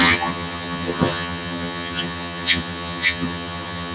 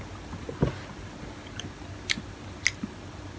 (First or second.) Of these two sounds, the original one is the second